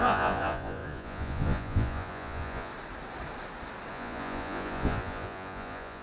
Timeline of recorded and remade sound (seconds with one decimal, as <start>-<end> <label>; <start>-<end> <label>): 0.0-2.7 remade; 2.7-3.9 recorded; 3.9-6.0 remade